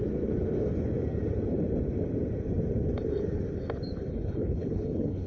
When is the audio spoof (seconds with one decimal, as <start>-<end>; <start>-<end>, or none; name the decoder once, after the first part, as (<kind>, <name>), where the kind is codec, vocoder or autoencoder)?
4.1-5.3 (codec, HILCodec)